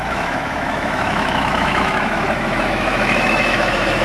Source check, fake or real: fake